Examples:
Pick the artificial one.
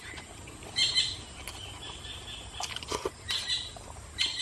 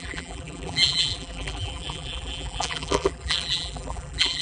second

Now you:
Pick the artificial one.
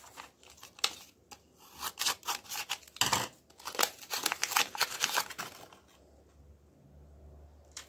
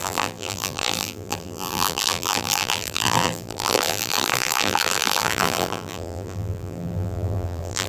second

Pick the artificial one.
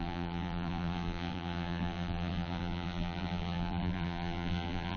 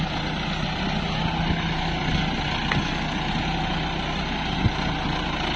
first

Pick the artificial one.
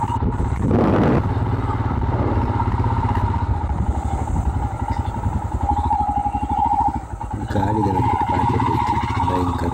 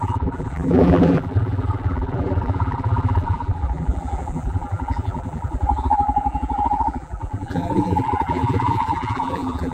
second